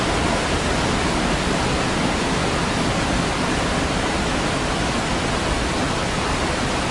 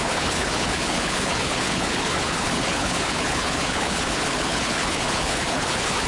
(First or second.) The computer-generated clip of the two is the second